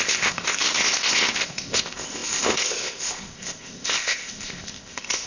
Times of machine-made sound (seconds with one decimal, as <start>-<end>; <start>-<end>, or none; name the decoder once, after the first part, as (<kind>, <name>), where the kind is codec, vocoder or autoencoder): 0.0-5.3 (codec, ZipCodec)